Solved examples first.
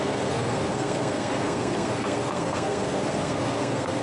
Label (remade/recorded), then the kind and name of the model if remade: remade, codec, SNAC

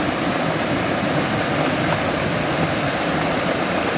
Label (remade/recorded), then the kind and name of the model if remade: recorded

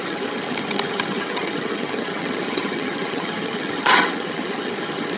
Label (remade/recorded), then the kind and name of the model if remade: remade, vocoder, HiFi-GAN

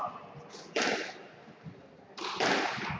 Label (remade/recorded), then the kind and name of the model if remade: recorded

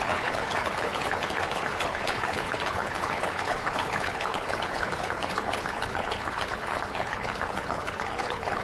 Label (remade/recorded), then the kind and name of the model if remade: remade, codec, HILCodec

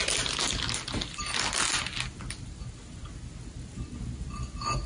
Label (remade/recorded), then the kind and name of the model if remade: recorded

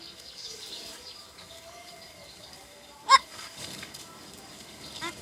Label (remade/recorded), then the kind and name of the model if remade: remade, codec, DAC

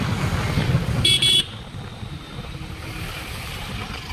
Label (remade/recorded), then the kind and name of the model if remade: recorded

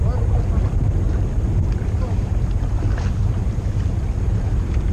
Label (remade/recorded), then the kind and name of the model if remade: recorded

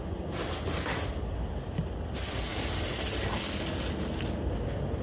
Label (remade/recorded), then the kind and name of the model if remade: recorded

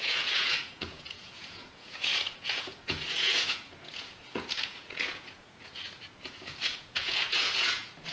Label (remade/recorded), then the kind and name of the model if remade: remade, vocoder, Vocos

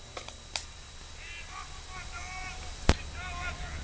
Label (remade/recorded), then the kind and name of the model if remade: recorded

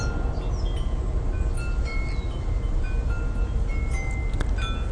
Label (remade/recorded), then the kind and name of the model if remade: recorded